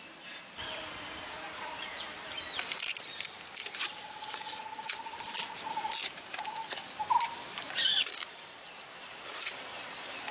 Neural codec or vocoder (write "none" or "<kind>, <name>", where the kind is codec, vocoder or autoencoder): none